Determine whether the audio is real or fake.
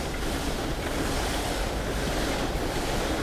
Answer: real